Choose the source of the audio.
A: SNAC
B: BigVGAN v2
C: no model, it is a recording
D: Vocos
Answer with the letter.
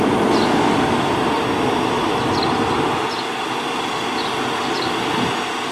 C